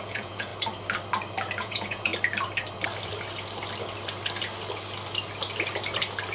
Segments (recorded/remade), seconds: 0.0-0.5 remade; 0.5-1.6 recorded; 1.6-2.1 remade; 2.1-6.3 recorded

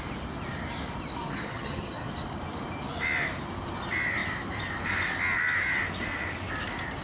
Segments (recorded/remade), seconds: 0.0-1.2 recorded; 1.2-2.1 remade; 2.1-7.0 recorded

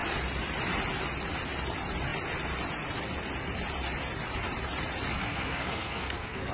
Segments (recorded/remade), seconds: 0.0-5.2 recorded; 5.2-6.5 remade

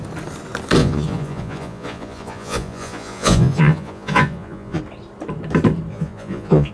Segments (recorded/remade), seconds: 0.0-0.8 recorded; 0.8-4.8 remade; 4.8-5.9 recorded; 5.9-6.7 remade

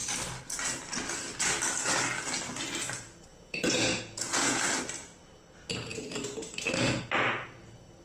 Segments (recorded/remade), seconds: 0.0-3.3 recorded; 3.3-4.6 remade; 4.6-8.0 recorded

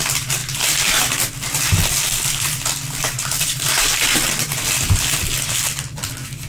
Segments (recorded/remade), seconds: 0.0-6.5 recorded